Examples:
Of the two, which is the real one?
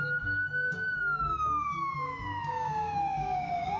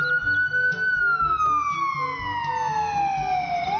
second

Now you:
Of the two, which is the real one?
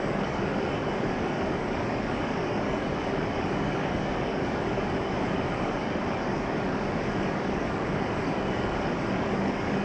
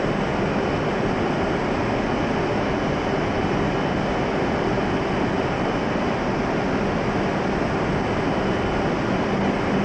second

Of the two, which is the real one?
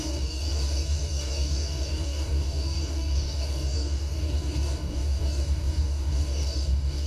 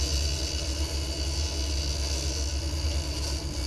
second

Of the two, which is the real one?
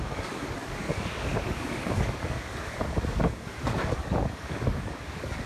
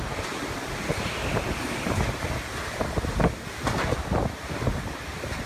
second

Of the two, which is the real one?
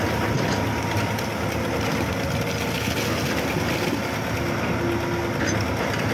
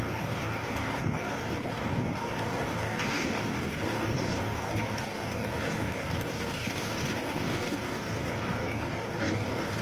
first